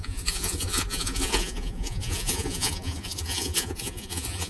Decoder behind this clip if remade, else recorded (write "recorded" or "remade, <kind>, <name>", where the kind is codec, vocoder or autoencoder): remade, vocoder, Vocos